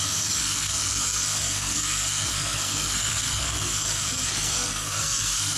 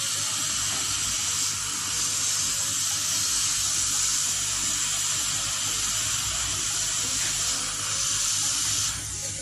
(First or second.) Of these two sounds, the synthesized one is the first